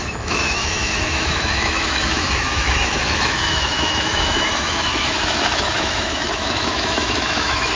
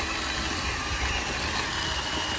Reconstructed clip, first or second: first